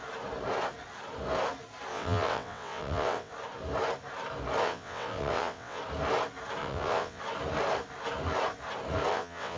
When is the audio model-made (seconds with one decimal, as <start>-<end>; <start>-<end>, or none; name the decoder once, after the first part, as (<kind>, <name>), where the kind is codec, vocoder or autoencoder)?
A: 1.9-3.3 (vocoder, WaveNeXt); 4.6-5.8; 6.6-7.2; 9.1-9.6